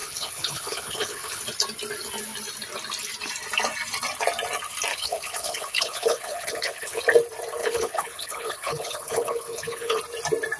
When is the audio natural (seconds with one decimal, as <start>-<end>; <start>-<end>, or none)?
1.4-4.9; 7.0-7.6; 10.0-10.6